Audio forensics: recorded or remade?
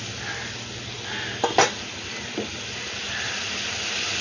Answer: recorded